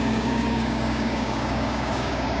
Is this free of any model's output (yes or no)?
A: no